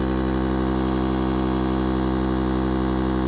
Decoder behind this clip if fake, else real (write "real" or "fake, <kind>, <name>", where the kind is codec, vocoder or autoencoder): real